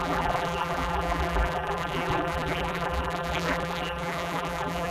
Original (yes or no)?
no